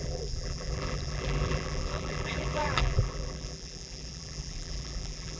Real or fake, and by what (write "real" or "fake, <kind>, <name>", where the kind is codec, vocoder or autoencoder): fake, vocoder, BigVGAN v2